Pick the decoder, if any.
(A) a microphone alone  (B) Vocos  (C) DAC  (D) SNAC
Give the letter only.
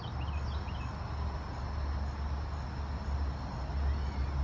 A